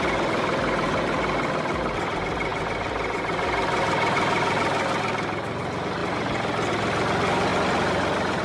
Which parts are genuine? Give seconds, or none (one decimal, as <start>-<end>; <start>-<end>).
0.0-8.4